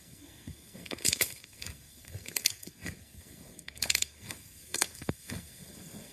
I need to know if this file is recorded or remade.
remade